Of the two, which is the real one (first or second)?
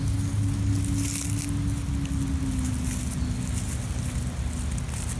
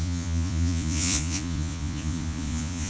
first